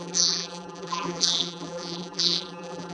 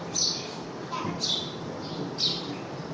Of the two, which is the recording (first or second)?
second